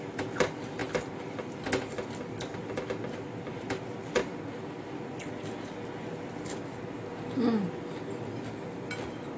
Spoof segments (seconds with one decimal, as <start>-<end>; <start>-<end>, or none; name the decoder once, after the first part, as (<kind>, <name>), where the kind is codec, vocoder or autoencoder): none